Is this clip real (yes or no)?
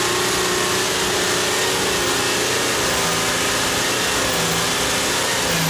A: yes